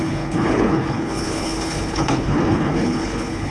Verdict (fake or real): fake